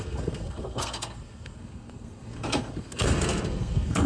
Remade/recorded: remade